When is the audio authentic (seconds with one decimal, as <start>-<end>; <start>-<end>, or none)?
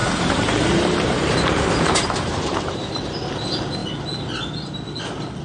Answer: 2.9-5.4